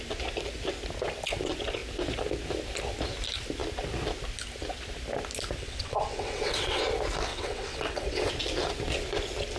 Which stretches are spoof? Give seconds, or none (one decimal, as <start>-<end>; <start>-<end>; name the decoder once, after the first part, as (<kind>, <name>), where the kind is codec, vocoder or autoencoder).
5.6-6.8 (vocoder, WaveNeXt); 7.3-8.3